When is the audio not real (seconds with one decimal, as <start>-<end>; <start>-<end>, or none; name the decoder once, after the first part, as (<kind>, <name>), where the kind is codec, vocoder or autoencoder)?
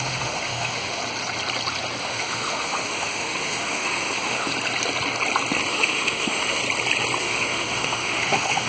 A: 0.0-1.0 (autoencoder, DAC-VAE); 2.0-4.5; 5.7-6.6; 7.2-8.7